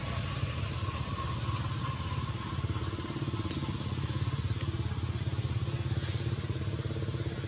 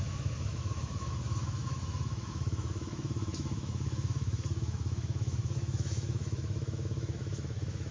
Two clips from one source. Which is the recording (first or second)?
first